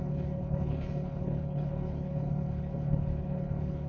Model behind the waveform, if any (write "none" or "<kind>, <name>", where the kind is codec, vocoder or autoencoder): codec, HILCodec